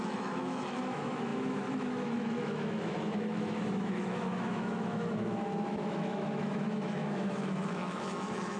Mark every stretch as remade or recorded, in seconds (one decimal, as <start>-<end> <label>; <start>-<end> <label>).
0.0-8.6 remade